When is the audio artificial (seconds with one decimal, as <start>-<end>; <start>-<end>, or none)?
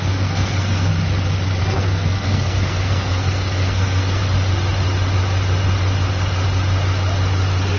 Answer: 0.0-0.9; 1.6-4.2